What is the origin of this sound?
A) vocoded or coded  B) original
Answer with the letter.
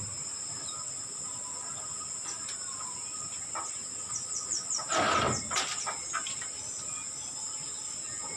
B